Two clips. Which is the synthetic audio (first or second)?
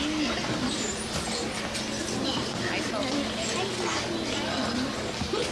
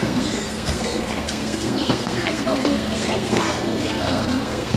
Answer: second